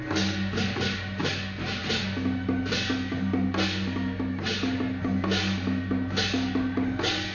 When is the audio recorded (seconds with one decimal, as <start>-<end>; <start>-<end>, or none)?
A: 0.0-7.3